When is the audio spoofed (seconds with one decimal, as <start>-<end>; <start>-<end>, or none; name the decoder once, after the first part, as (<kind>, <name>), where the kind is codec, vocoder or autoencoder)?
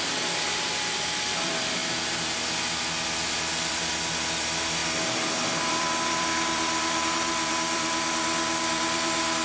0.0-1.8 (vocoder, BigVGAN v2); 3.7-9.4